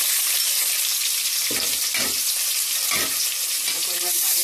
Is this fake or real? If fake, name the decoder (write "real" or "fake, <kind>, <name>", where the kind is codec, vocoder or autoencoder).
real